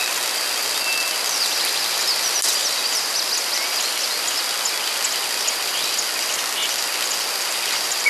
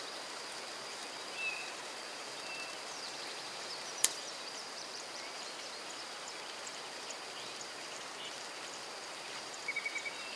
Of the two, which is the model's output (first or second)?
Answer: second